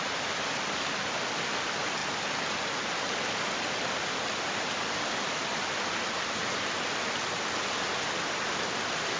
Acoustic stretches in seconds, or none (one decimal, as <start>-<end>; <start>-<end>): 0.0-9.2